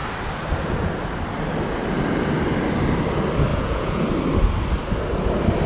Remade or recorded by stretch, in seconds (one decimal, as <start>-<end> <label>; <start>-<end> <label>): 0.0-3.5 recorded; 3.5-4.1 remade; 4.1-5.7 recorded